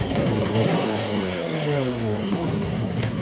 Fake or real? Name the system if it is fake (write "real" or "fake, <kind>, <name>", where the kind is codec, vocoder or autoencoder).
fake, codec, SNAC